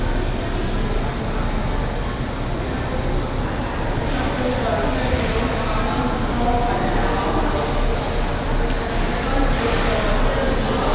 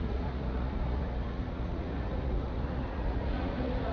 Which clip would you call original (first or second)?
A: first